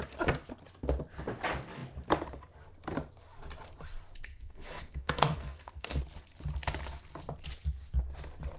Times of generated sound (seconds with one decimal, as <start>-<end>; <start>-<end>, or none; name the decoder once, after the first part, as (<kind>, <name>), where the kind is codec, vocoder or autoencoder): 4.3-6.0 (codec, SNAC)